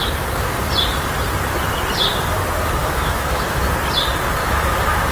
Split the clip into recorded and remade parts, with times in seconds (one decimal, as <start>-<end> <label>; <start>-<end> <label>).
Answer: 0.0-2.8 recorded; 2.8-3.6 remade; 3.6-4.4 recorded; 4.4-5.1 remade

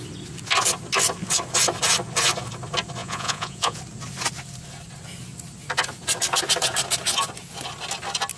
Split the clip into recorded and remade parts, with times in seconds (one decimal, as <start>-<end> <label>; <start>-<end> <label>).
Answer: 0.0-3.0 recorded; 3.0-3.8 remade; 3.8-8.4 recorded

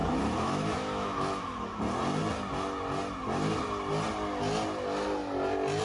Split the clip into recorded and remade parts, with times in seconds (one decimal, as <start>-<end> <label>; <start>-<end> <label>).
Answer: 0.0-1.8 remade; 1.8-5.8 recorded